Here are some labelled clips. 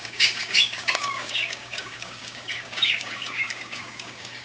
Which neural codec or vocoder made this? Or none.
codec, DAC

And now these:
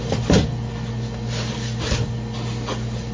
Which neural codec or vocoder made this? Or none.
none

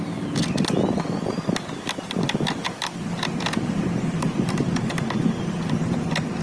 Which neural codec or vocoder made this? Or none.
none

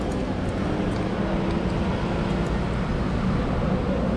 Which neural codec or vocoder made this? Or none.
none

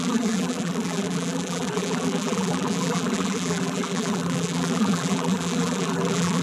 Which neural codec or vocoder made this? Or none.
vocoder, BigVGAN v2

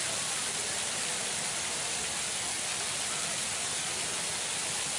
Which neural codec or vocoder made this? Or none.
none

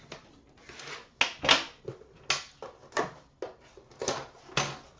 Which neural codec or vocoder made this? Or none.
none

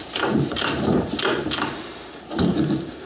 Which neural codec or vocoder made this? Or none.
vocoder, BigVGAN v2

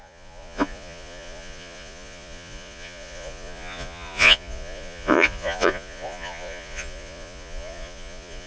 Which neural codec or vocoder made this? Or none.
vocoder, Vocos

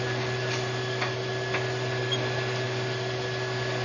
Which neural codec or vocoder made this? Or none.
none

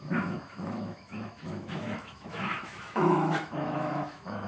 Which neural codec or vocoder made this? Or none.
autoencoder, DAC-VAE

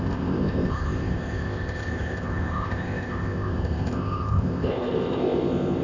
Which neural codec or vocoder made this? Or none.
codec, ZipCodec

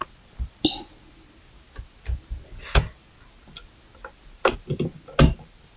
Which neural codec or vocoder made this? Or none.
none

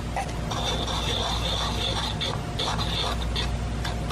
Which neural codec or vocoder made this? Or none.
none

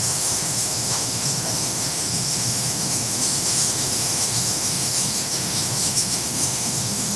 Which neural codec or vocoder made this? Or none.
autoencoder, DAC-VAE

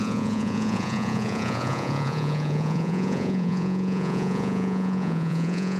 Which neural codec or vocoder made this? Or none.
vocoder, Vocos